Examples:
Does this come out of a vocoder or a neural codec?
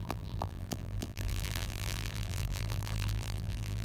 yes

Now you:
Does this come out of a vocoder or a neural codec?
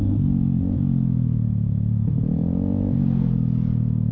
yes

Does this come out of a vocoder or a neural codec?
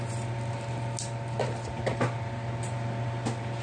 no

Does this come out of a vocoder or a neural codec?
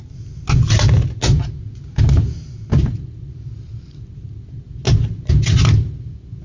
no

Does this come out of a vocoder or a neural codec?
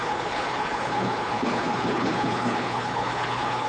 yes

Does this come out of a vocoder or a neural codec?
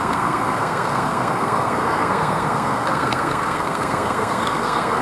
yes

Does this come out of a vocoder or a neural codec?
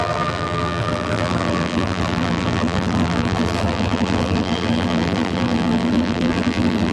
yes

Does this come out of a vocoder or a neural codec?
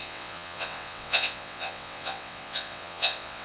yes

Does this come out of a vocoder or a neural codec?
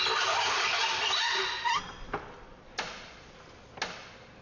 no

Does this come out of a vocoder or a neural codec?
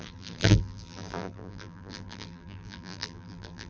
yes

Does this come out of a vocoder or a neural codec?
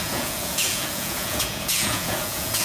yes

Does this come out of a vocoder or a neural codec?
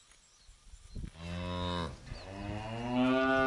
no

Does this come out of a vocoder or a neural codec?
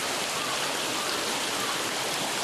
no